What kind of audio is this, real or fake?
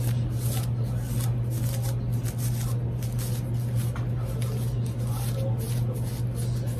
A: real